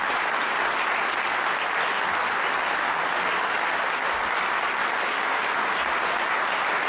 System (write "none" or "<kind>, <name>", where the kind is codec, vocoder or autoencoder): none